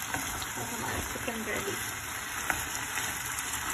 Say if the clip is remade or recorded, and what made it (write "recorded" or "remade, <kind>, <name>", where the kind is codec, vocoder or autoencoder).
recorded